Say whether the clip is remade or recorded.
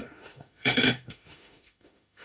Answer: remade